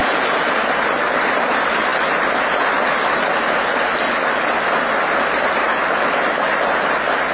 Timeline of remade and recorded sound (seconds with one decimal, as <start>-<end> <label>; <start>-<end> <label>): 0.0-7.3 recorded